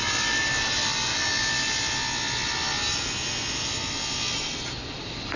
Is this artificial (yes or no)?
no